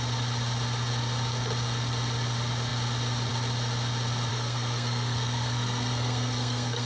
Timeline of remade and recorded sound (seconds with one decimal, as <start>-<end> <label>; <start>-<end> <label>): 0.0-4.3 recorded; 4.3-6.9 remade